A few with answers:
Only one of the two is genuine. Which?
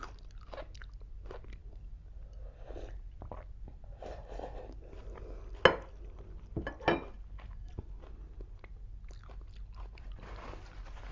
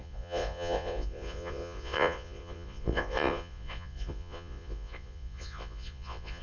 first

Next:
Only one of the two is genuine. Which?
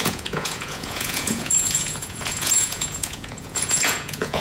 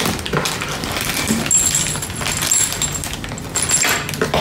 second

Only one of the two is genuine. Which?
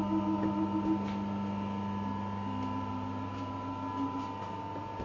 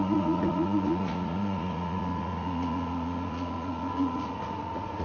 first